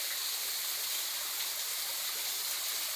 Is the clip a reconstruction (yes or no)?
yes